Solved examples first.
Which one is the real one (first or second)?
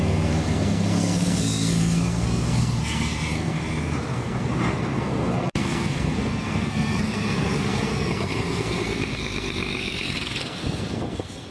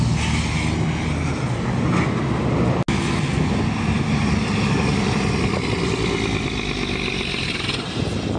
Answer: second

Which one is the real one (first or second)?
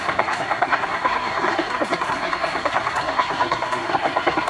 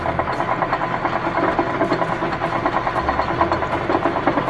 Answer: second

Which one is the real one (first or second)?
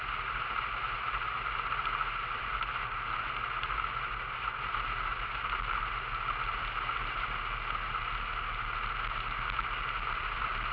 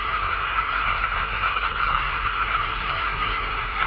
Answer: first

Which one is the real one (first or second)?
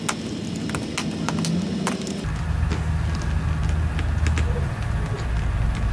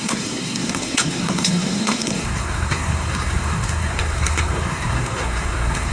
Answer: first